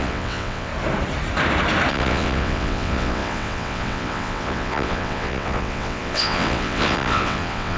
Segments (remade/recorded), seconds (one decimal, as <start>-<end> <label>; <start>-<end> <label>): 0.0-0.7 remade; 0.7-1.9 recorded; 1.9-7.8 remade